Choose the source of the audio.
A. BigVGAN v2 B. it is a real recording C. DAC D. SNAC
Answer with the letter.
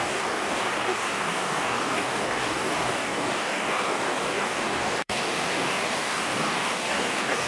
C